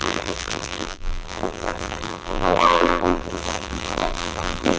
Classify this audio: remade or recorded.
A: remade